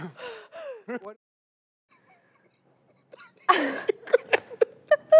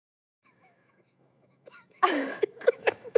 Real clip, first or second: first